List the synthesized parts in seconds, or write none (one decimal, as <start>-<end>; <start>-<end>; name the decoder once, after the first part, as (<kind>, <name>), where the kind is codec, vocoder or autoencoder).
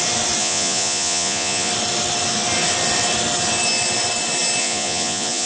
0.4-1.7 (vocoder, Vocos); 4.6-5.5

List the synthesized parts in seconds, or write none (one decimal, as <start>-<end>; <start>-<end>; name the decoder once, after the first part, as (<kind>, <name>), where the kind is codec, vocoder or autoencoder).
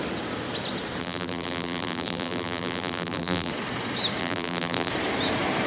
1.0-3.5 (vocoder, BigVGAN v2); 4.2-4.9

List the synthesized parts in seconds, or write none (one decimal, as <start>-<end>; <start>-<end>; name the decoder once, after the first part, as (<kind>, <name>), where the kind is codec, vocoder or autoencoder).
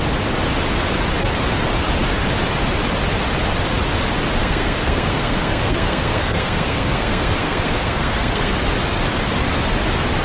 4.4-8.5 (codec, SNAC)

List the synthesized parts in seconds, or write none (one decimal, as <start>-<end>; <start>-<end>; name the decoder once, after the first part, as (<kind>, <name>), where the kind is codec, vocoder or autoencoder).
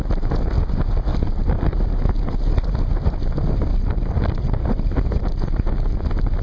1.1-4.2 (vocoder, BigVGAN v2)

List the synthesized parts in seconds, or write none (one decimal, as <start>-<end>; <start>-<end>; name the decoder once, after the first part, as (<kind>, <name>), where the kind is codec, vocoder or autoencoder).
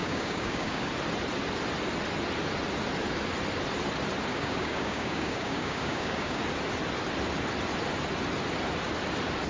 0.0-0.9 (codec, DAC); 4.3-6.4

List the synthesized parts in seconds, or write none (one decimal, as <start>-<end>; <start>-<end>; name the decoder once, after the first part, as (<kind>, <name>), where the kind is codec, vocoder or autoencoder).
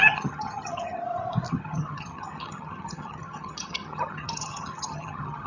0.0-1.0 (vocoder, HiFi-GAN); 1.5-5.5